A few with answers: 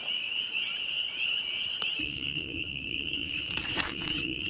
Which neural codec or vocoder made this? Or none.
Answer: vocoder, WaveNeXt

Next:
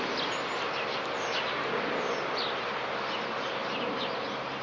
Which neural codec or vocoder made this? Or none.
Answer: none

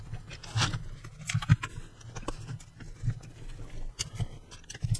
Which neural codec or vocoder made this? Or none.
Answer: none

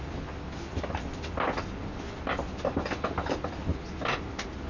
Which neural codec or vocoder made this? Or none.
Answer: none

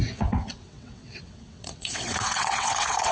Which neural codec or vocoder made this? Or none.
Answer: vocoder, WaveNeXt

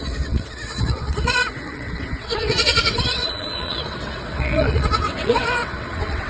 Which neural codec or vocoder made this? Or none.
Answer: vocoder, WaveNeXt